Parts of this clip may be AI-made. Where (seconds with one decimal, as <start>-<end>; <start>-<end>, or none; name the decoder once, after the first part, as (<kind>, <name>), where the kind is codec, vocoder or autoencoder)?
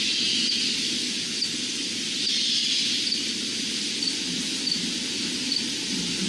2.6-3.4 (vocoder, BigVGAN v2)